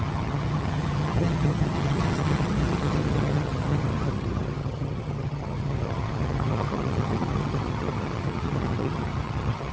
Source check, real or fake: fake